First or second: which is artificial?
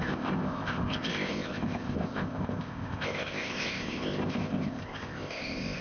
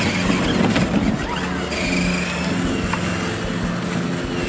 first